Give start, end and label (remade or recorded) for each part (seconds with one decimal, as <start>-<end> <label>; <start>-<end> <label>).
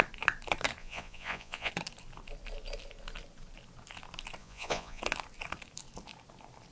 0.0-0.8 recorded; 0.8-1.7 remade; 1.7-4.4 recorded; 4.4-5.0 remade; 5.0-6.7 recorded